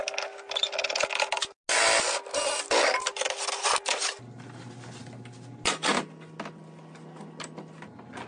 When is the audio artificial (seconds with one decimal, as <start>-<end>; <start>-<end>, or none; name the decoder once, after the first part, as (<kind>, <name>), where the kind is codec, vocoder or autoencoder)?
none